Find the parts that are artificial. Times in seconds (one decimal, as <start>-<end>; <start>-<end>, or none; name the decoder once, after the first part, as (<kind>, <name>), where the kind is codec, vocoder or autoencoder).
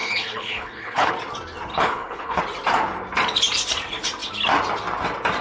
0.0-1.1 (codec, HILCodec); 1.7-2.4